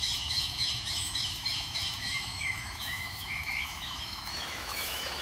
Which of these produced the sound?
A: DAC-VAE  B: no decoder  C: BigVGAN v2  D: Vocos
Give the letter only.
A